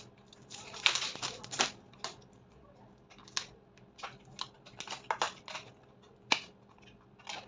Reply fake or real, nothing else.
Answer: real